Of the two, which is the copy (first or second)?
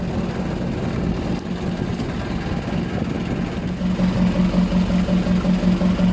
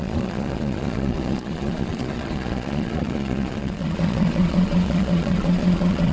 second